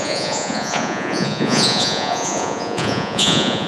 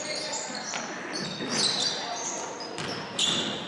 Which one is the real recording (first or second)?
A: second